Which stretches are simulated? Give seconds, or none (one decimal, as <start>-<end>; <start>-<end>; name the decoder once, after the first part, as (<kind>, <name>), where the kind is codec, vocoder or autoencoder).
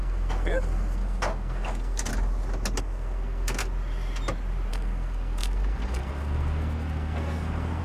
0.0-2.1 (codec, SNAC); 2.8-3.6; 4.7-7.8